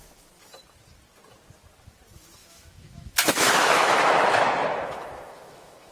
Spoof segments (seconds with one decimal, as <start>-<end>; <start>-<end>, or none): 2.4-5.9